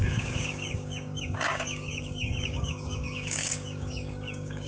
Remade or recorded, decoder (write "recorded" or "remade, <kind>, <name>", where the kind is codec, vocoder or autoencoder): remade, codec, DAC